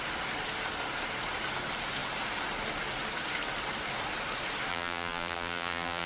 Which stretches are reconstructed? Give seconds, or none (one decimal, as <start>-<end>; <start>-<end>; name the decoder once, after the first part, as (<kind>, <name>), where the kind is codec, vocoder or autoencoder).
4.7-6.1 (vocoder, BigVGAN v2)

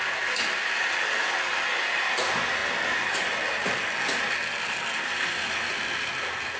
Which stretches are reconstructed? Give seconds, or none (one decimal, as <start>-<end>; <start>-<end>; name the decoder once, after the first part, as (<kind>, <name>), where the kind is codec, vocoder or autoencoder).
none

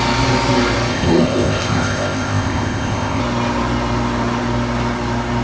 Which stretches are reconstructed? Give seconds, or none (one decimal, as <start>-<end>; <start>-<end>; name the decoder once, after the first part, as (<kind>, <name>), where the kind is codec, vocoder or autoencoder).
0.9-3.2 (codec, ZipCodec)

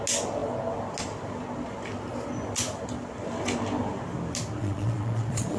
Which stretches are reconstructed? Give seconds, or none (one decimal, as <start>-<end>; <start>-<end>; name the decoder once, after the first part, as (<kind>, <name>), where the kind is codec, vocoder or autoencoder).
4.6-5.6 (vocoder, Vocos)

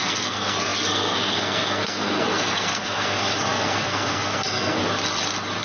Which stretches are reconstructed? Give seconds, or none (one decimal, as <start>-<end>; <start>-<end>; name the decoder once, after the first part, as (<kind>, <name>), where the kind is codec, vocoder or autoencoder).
0.0-4.8 (codec, SNAC)